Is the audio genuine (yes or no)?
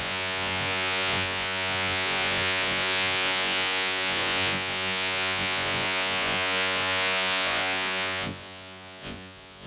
no